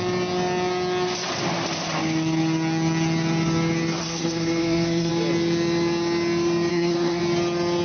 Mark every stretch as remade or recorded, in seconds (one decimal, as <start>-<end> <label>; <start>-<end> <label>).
0.0-4.0 recorded; 4.0-5.1 remade; 5.1-6.7 recorded; 6.7-7.2 remade; 7.2-7.8 recorded